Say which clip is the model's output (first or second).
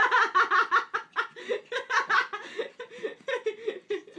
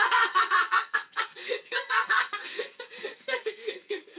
second